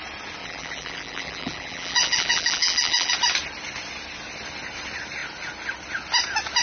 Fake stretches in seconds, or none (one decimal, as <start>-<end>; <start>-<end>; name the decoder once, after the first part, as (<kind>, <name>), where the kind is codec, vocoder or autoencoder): 0.4-3.1 (vocoder, BigVGAN v2)